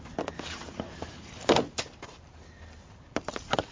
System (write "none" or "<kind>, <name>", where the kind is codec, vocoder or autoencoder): none